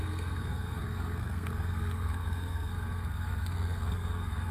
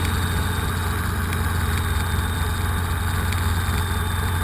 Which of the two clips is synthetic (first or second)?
first